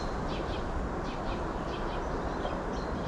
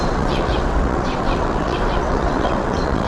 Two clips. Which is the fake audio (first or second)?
second